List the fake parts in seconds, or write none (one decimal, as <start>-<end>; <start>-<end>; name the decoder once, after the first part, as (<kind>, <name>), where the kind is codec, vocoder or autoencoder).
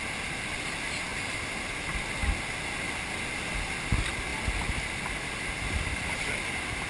none